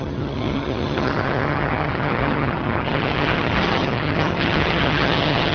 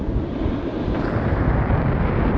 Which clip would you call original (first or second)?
second